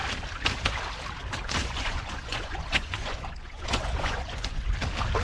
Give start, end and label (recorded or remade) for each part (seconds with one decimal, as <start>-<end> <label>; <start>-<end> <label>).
0.0-1.6 recorded; 1.6-4.7 remade; 4.7-5.2 recorded